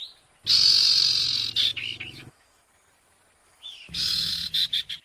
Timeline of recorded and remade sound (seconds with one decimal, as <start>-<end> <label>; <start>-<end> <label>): 0.0-1.7 recorded; 1.7-2.7 remade; 2.7-3.4 recorded; 3.4-4.3 remade; 4.3-5.0 recorded